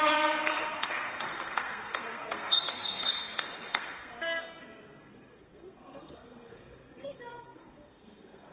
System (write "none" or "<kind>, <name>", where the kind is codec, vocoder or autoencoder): codec, SNAC